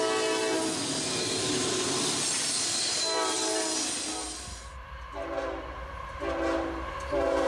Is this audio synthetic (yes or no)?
no